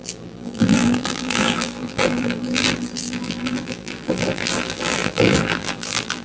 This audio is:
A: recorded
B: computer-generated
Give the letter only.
B